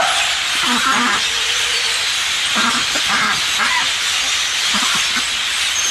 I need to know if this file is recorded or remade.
recorded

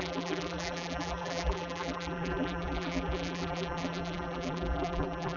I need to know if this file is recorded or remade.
remade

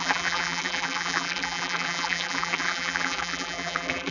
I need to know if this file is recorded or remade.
remade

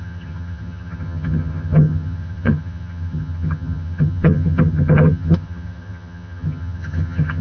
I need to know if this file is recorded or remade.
remade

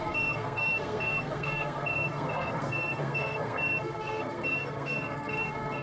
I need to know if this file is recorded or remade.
remade